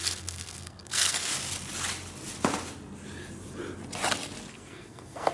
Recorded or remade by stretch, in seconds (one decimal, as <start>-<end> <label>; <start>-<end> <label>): 0.0-1.3 remade; 1.3-4.5 recorded; 4.5-5.3 remade